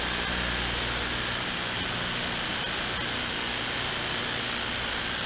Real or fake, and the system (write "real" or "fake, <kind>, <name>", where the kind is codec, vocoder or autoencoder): real